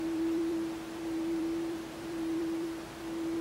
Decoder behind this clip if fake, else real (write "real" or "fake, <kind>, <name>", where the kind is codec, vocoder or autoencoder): fake, vocoder, BigVGAN v2